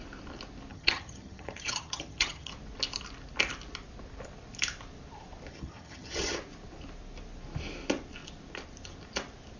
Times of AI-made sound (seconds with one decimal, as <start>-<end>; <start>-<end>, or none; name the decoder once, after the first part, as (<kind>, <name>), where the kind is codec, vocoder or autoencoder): 0.7-2.5 (vocoder, HiFi-GAN); 5.5-6.4